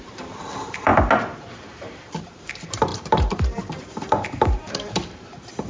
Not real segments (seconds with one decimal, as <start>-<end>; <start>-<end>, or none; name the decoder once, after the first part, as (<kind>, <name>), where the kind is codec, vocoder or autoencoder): 0.0-0.9 (vocoder, BigVGAN v2); 1.5-5.7